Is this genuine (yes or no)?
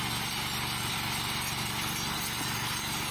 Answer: yes